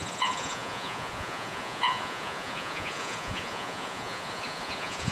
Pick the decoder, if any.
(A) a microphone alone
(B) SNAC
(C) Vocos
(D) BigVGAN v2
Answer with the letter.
C